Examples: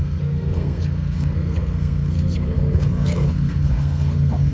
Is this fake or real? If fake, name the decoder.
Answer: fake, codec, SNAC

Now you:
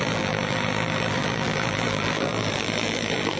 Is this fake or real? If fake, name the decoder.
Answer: fake, vocoder, BigVGAN v2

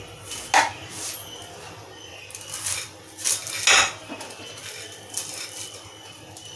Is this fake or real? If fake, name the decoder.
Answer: real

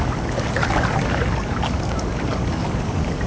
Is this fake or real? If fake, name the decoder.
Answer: fake, codec, DAC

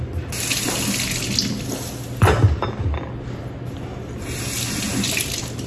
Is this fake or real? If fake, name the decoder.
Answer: real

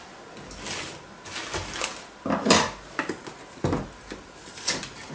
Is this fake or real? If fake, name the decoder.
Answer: real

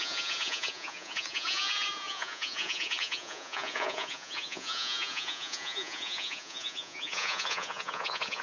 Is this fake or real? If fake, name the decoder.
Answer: fake, vocoder, Vocos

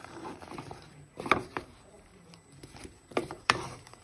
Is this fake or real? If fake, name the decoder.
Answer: fake, vocoder, BigVGAN v2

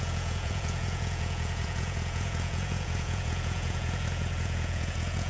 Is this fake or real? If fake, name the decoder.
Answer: fake, vocoder, Vocos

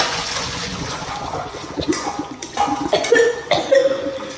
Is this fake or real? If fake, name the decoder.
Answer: fake, vocoder, Vocos